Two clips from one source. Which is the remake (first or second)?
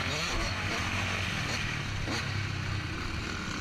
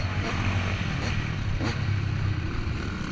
second